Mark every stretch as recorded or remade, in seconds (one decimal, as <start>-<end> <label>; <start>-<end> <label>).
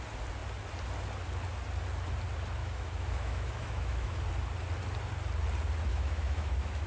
0.0-2.6 recorded; 2.6-4.2 remade; 4.2-5.9 recorded; 5.9-6.9 remade